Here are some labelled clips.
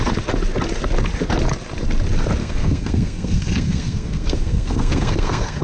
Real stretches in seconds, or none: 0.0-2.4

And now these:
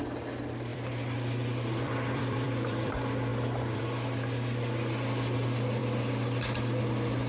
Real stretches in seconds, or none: 0.0-0.7; 2.9-3.3; 3.8-7.3

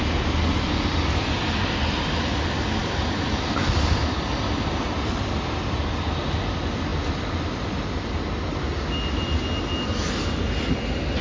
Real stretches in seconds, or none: 0.0-11.2

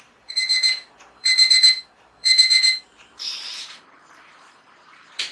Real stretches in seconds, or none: none

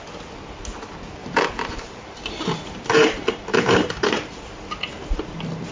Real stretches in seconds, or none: 0.0-1.2; 4.6-5.7

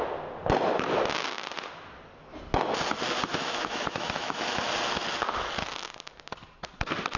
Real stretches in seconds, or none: 0.0-3.3; 4.6-7.2